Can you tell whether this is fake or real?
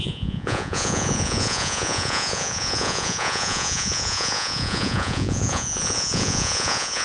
fake